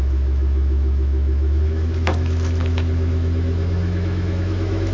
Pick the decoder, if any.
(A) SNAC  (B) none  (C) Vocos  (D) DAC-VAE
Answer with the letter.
D